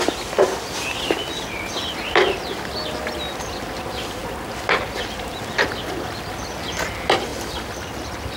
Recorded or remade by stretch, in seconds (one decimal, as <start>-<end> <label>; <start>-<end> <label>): 0.0-8.4 recorded